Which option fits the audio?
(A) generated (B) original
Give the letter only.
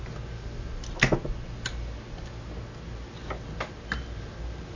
B